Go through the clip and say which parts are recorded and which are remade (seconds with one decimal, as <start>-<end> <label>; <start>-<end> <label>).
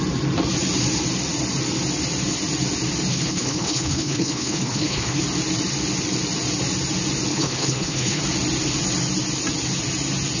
0.0-3.1 recorded; 3.1-5.2 remade; 5.2-7.3 recorded; 7.3-8.2 remade; 8.2-10.4 recorded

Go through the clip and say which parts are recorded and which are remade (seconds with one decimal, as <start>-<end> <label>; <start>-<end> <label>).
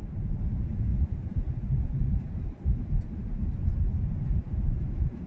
0.0-5.3 remade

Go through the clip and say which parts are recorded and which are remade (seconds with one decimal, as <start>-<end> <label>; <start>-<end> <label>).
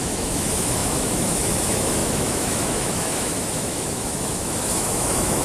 0.0-5.4 remade